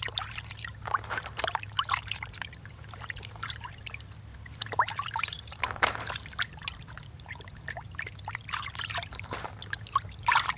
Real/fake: fake